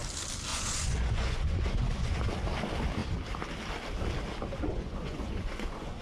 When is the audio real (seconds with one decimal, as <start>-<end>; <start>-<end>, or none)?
0.0-0.5; 2.3-4.7